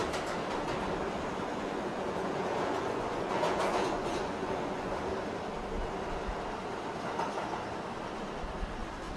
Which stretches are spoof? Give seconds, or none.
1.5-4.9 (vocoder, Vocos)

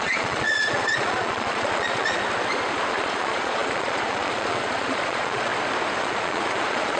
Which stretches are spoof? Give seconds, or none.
0.0-2.2 (vocoder, Vocos); 2.9-5.5; 6.0-7.0